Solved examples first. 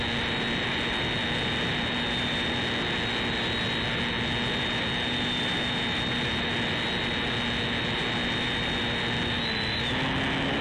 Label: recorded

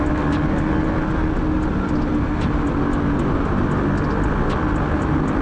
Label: recorded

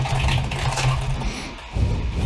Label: recorded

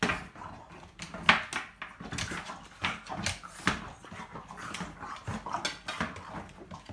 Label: recorded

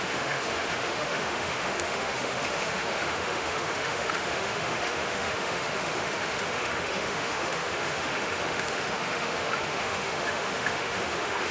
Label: remade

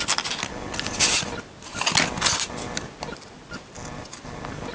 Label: recorded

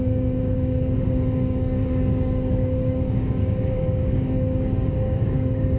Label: remade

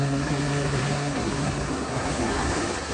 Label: remade